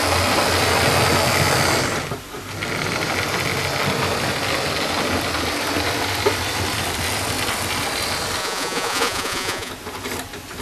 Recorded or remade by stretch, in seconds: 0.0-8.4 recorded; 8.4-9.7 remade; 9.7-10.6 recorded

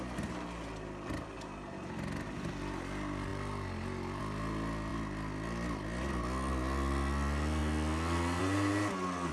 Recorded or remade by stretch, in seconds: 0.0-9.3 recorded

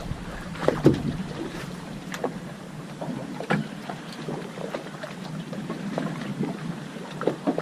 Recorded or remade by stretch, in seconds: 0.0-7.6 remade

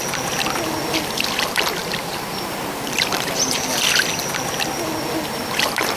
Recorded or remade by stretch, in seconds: 0.0-6.0 recorded

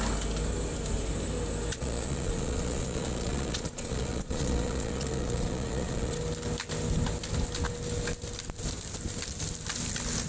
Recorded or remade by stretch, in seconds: 0.0-1.7 recorded; 1.7-6.2 remade; 6.2-10.3 recorded